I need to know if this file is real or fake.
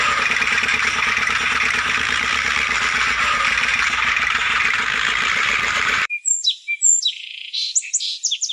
fake